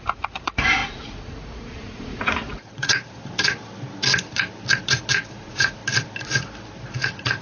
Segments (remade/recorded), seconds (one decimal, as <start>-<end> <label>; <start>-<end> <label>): 0.0-3.2 remade; 3.2-5.3 recorded; 5.3-5.8 remade; 5.8-6.9 recorded; 6.9-7.4 remade